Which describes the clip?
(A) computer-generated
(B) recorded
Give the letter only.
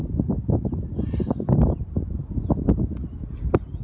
B